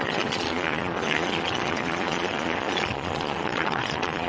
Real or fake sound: fake